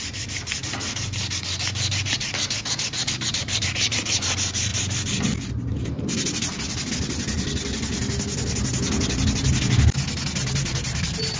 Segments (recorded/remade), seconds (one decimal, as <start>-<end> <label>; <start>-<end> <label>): 0.0-0.6 recorded; 0.6-1.2 remade; 1.2-3.0 recorded; 3.0-3.6 remade; 3.6-4.7 recorded; 4.7-6.9 remade; 6.9-11.4 recorded